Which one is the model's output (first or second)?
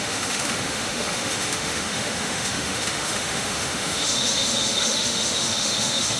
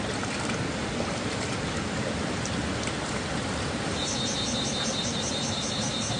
first